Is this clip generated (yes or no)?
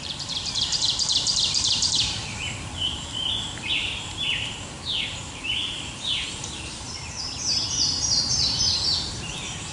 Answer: yes